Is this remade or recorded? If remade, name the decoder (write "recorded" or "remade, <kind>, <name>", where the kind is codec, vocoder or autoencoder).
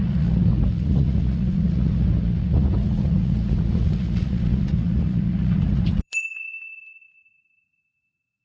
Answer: remade, vocoder, Vocos